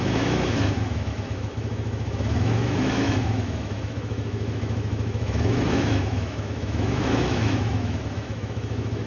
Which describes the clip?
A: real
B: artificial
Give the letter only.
B